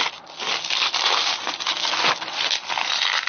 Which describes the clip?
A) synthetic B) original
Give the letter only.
B